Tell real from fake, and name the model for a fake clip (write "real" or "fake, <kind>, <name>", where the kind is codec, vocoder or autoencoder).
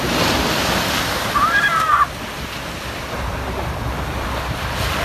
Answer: real